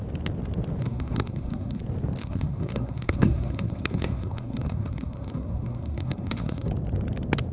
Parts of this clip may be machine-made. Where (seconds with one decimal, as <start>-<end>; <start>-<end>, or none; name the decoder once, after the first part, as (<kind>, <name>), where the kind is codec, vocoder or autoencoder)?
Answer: 0.8-1.8 (codec, SNAC); 2.2-6.7